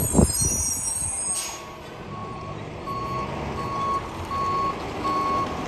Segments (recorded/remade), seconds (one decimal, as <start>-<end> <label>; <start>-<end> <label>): 0.0-2.2 recorded; 2.2-3.0 remade; 3.0-5.7 recorded